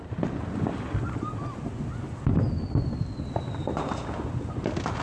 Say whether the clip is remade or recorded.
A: recorded